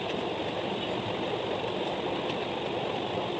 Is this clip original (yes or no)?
yes